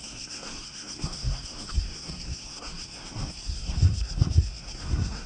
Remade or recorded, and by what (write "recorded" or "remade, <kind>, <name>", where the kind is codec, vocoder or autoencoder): remade, codec, SNAC